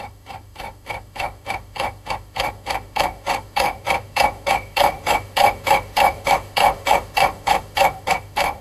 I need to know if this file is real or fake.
fake